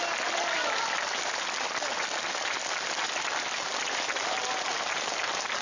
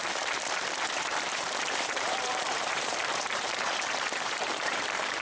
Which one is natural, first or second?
first